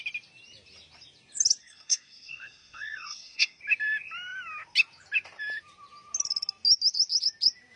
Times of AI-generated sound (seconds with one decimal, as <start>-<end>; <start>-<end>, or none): 1.6-3.6